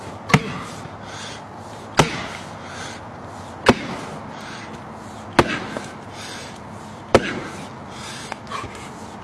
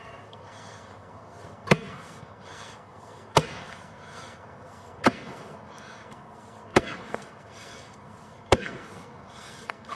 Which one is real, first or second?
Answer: first